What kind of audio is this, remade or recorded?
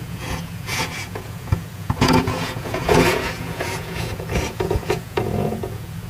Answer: remade